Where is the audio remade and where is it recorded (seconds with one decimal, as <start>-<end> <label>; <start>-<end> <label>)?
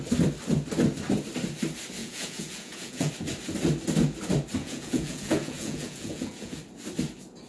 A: 0.0-2.0 recorded; 2.0-3.1 remade; 3.1-4.6 recorded; 4.6-6.6 remade; 6.6-7.5 recorded